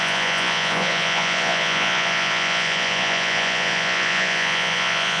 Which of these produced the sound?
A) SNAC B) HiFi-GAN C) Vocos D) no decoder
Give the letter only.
C